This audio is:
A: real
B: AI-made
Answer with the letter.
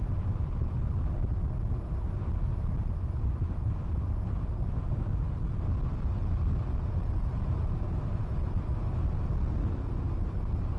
A